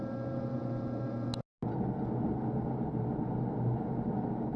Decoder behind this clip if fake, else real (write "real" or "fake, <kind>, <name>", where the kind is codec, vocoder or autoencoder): real